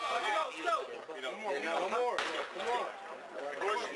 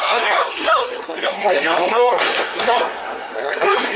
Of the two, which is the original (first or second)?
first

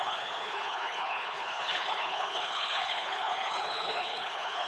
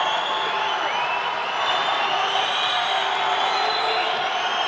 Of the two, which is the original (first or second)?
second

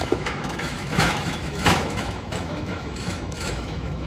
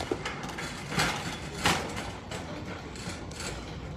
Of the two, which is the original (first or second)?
second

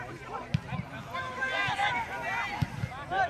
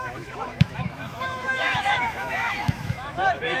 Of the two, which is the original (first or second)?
first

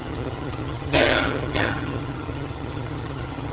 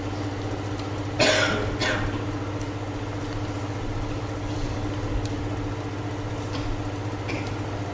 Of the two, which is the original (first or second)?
second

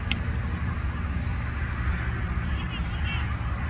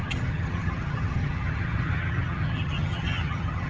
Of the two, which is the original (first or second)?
first